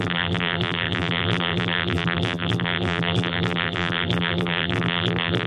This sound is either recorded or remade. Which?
remade